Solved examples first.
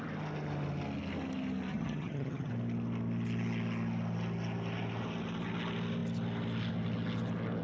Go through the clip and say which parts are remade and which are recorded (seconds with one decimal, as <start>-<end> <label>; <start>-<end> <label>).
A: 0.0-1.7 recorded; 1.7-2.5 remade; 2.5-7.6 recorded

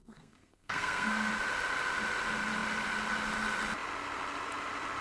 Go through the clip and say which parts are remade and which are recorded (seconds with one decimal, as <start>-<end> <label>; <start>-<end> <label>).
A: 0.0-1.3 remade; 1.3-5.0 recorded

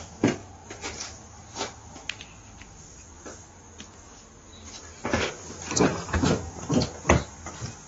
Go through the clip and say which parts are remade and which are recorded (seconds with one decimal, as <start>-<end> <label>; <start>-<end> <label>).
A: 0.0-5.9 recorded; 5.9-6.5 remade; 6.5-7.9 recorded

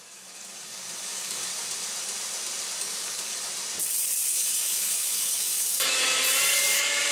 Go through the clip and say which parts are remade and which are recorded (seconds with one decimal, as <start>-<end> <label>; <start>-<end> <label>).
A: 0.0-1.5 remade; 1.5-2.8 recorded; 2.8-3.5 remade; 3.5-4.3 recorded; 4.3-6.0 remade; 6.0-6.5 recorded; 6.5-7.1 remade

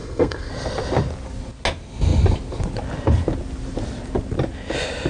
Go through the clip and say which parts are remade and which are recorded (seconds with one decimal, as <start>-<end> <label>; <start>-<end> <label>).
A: 0.0-0.5 remade; 0.5-5.1 recorded

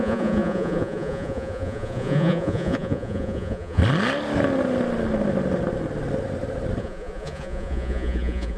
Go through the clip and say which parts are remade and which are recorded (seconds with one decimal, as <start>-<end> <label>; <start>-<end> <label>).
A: 0.0-3.8 remade; 3.8-6.8 recorded; 6.8-8.6 remade